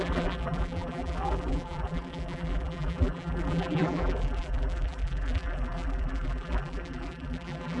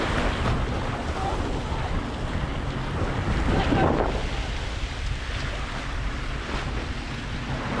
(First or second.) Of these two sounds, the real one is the second